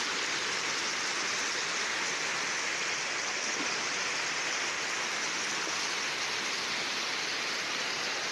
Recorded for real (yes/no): yes